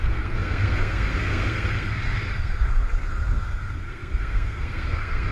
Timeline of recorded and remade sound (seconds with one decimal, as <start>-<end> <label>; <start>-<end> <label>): 0.0-5.3 remade